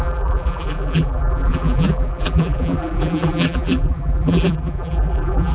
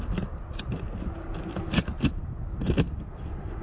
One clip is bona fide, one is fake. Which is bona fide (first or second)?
second